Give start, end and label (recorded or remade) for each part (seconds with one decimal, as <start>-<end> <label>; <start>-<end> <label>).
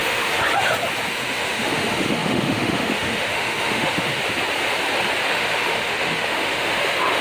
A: 0.0-0.4 remade; 0.4-1.1 recorded; 1.1-4.2 remade; 4.2-5.3 recorded; 5.3-7.2 remade